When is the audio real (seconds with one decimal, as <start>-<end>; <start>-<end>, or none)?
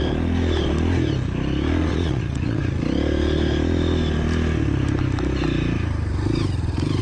0.0-1.8; 2.6-7.0